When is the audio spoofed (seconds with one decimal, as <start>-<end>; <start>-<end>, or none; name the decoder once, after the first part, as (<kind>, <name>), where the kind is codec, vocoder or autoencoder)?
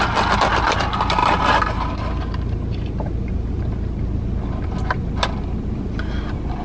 1.2-3.6 (vocoder, BigVGAN v2)